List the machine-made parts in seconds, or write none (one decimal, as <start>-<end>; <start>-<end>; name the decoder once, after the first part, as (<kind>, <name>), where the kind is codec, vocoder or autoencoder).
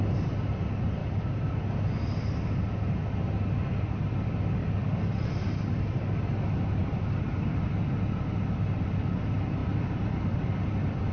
1.0-3.1 (vocoder, BigVGAN v2); 4.6-6.3; 6.8-7.6; 9.6-11.1